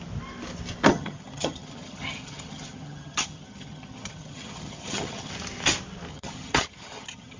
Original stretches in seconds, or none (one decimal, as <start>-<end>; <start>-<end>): 0.0-0.9; 5.3-6.1